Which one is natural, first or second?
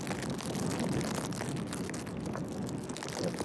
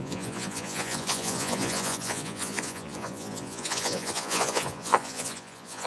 first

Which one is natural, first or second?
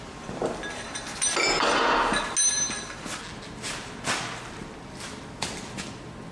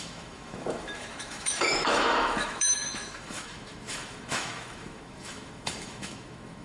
first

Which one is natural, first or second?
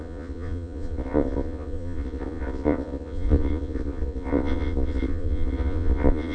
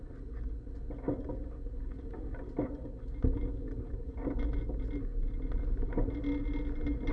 second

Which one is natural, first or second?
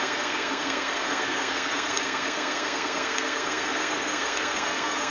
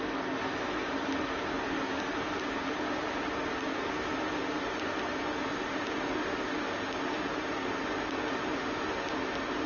second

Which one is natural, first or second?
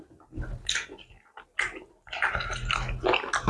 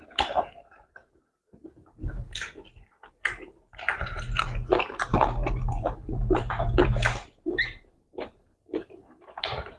first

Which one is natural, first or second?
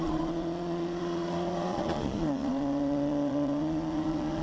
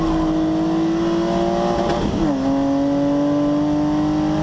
second